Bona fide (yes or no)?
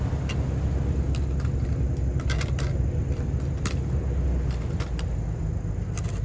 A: yes